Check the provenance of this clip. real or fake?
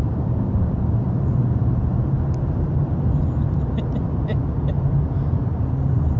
real